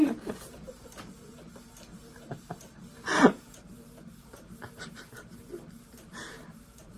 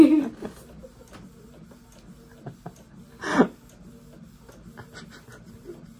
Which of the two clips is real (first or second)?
second